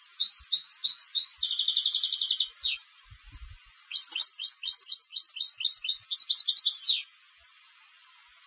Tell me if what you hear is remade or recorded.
recorded